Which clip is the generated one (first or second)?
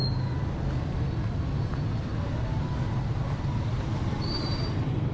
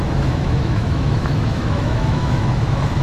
second